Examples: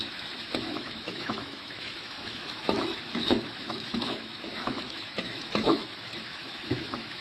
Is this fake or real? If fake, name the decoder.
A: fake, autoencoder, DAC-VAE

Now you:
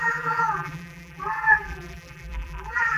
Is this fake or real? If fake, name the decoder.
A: fake, vocoder, BigVGAN v2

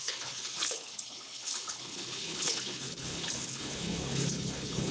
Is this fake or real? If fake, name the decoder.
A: fake, codec, HILCodec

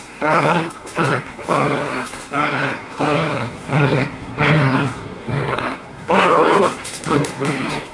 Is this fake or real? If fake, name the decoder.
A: fake, codec, SNAC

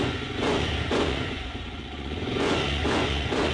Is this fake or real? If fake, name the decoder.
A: fake, vocoder, Vocos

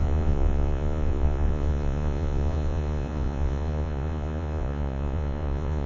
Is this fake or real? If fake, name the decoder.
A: fake, vocoder, Vocos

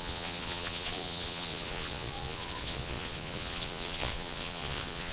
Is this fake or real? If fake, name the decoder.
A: fake, vocoder, Vocos